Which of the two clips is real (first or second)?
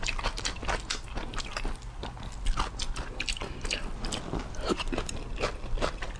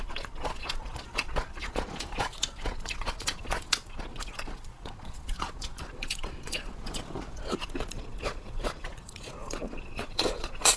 first